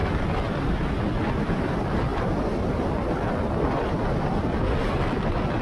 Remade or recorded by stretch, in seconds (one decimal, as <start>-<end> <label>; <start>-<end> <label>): 0.0-5.6 recorded